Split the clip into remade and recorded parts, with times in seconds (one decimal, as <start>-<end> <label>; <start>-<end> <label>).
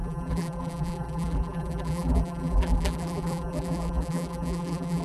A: 0.0-5.0 remade